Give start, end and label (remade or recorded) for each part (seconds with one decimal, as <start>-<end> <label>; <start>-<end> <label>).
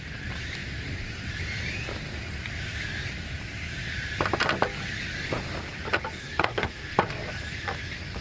0.0-6.2 recorded; 6.2-6.9 remade; 6.9-8.2 recorded